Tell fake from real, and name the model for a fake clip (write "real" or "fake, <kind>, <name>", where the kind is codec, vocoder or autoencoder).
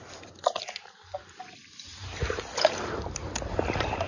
real